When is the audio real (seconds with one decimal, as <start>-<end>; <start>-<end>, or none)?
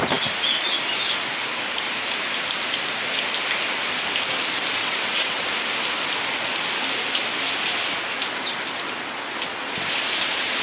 0.0-4.8; 5.4-10.6